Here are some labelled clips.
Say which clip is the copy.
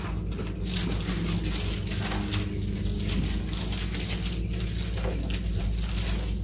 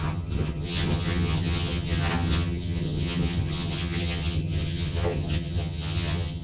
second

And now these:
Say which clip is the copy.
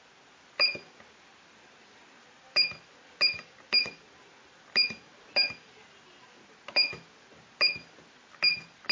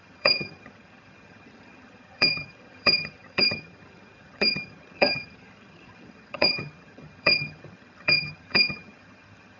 second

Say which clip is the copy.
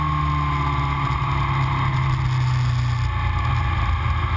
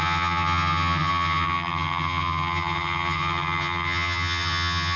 second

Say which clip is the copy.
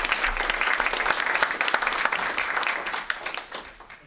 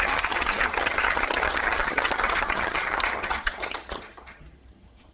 second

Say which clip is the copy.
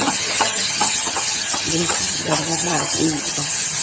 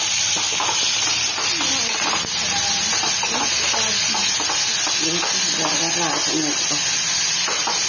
first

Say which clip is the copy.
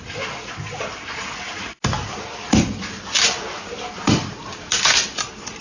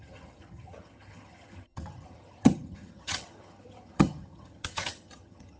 second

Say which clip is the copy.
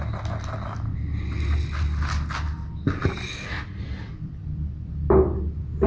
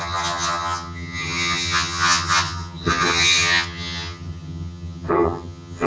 second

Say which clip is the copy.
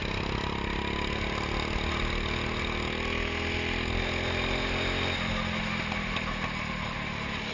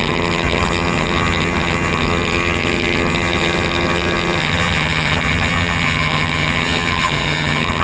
second